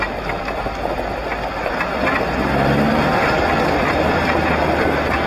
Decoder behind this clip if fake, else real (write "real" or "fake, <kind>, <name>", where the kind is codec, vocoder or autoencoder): real